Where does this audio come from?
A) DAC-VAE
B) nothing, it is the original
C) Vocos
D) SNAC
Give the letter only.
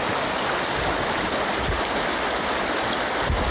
B